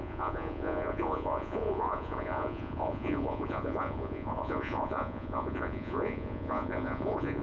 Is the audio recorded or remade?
remade